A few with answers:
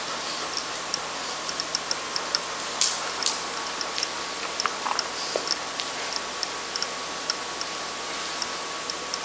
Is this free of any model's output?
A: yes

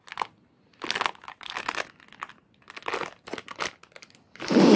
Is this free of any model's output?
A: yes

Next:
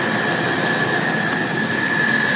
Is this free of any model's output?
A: yes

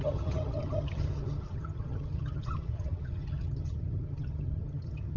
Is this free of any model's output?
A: no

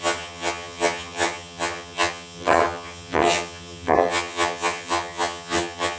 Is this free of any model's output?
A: no